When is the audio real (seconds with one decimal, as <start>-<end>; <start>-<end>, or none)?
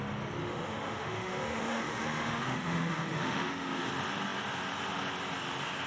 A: 0.0-0.4; 3.9-5.9